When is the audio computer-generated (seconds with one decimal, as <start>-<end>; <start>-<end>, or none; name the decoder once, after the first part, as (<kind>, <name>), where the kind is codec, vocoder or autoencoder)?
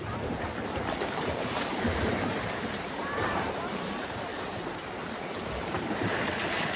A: 0.0-4.3 (vocoder, BigVGAN v2); 4.9-6.8